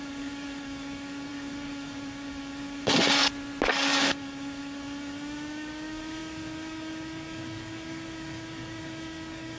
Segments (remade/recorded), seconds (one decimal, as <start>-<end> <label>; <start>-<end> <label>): 0.0-3.2 remade; 3.2-3.7 recorded; 3.7-9.6 remade